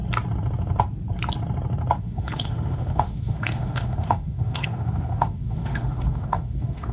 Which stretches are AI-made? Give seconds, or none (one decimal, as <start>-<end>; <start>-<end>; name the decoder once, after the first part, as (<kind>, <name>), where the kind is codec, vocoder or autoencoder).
2.0-6.9 (autoencoder, DAC-VAE)